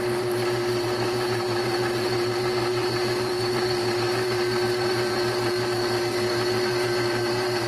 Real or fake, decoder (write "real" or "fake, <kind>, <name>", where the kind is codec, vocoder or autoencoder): fake, vocoder, BigVGAN v2